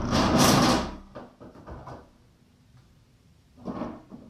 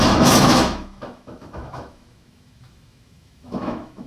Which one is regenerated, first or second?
second